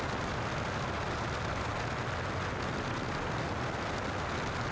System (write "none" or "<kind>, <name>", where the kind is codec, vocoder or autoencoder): none